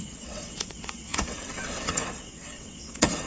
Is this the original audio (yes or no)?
no